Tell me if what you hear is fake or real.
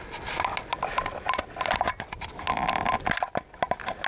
real